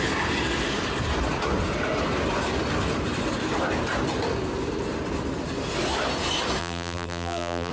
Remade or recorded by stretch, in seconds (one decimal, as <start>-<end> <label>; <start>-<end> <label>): 0.0-6.6 recorded; 6.6-7.7 remade